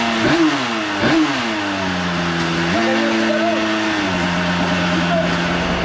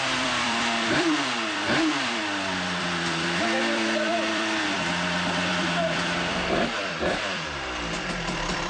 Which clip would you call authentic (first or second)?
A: first